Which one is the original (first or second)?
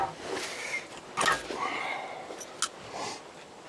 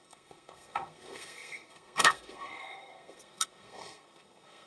first